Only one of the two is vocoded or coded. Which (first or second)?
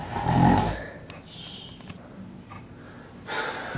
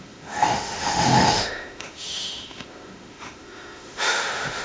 second